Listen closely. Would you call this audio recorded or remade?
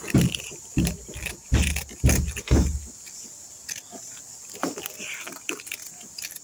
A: recorded